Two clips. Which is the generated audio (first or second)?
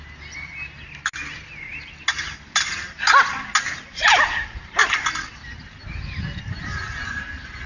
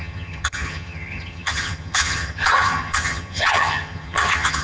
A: second